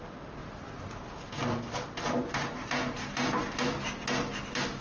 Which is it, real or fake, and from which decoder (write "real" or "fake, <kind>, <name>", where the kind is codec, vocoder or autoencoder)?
real